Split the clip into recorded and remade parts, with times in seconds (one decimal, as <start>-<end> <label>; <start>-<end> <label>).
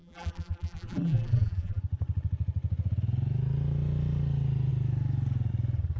0.0-1.8 remade; 1.8-6.0 recorded